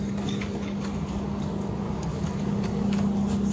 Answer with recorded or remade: remade